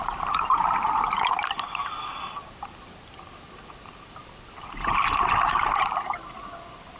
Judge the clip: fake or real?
fake